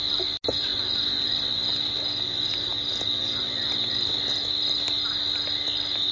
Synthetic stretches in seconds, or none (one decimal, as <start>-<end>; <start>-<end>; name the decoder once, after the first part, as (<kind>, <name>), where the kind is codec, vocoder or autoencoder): none